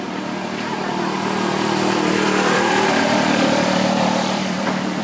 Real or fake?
fake